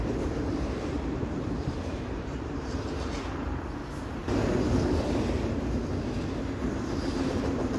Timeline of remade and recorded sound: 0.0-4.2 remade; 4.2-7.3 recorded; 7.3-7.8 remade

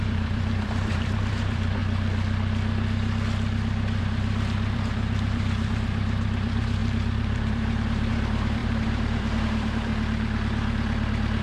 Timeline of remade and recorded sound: 0.0-1.8 remade; 1.8-4.0 recorded; 4.0-9.9 remade; 9.9-11.4 recorded

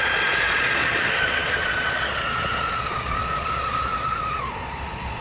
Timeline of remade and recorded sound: 0.0-5.2 remade

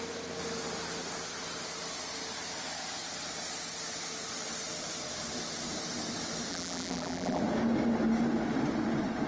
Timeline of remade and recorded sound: 0.0-6.5 recorded; 6.5-7.4 remade; 7.4-9.3 recorded

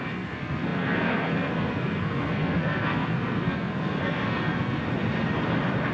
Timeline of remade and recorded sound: 0.0-4.8 remade; 4.8-5.9 recorded

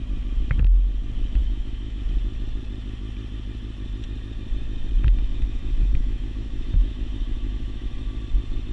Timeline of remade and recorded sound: 0.0-1.4 recorded; 1.4-2.0 remade; 2.0-5.3 recorded; 5.3-8.2 remade; 8.2-8.7 recorded

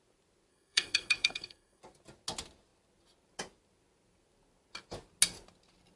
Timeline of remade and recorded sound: 0.0-0.5 recorded; 0.5-1.8 remade; 1.8-6.0 recorded

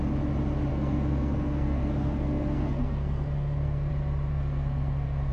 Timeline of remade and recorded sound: 0.0-0.7 recorded; 0.7-3.9 remade; 3.9-4.3 recorded; 4.3-5.3 remade